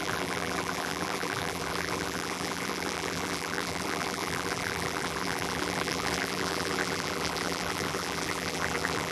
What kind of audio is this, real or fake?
fake